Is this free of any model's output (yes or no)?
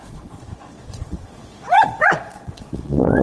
no